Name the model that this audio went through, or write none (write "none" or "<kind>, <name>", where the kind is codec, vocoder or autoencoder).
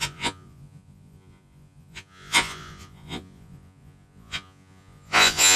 vocoder, Vocos